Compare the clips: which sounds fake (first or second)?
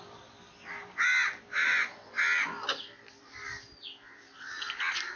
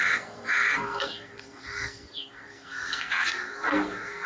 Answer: second